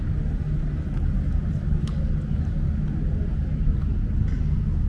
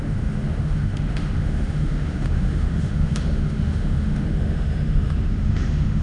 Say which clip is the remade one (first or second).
second